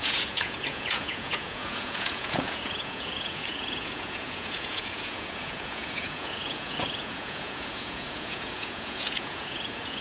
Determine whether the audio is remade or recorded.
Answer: remade